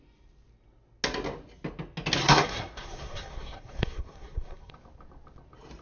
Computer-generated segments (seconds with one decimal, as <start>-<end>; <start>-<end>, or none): 2.2-4.7